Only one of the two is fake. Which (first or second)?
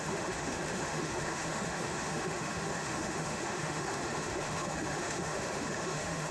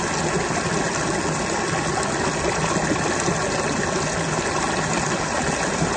first